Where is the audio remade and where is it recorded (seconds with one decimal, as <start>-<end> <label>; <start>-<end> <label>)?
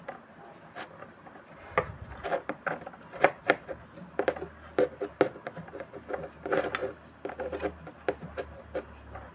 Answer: 0.0-9.3 recorded